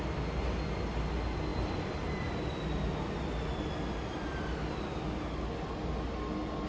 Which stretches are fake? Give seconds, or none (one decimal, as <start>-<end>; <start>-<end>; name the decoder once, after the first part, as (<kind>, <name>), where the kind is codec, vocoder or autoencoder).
none